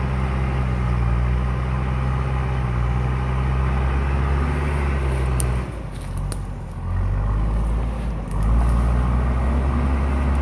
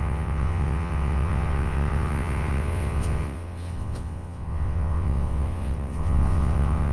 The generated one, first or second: second